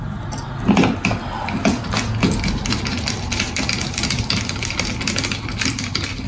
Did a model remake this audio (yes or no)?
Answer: no